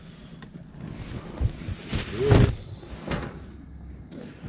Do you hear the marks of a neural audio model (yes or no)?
no